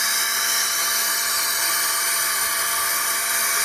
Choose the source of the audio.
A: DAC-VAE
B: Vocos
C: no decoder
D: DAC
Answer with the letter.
C